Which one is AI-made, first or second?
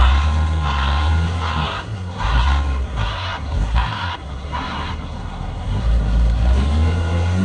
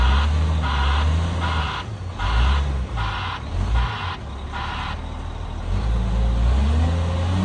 first